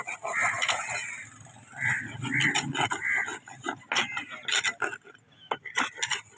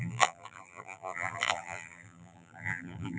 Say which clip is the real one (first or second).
first